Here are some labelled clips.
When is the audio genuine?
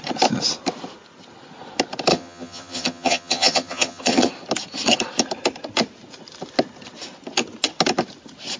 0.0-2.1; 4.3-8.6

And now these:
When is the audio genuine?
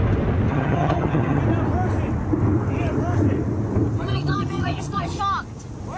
0.0-0.5; 1.4-4.1; 5.2-6.0